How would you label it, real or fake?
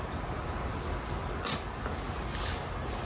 real